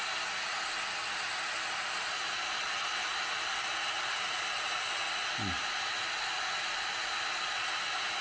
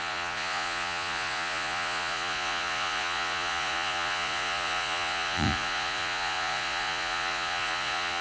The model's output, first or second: second